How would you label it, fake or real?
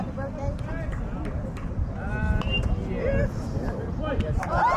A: real